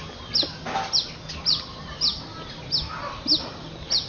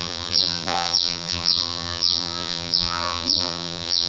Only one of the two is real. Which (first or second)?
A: first